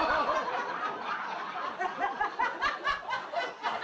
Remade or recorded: recorded